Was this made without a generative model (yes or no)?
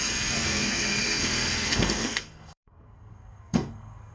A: no